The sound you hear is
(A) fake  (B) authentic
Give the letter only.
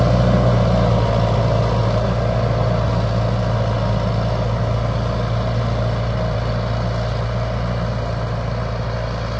B